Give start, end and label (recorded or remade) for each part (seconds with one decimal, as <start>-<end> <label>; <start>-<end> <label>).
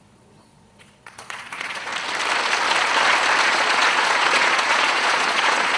0.0-1.9 remade; 1.9-3.4 recorded; 3.4-5.8 remade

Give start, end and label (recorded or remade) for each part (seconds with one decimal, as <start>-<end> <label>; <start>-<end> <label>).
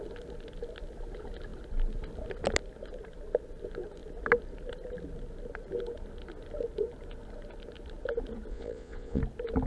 0.0-8.5 recorded; 8.5-9.2 remade; 9.2-9.7 recorded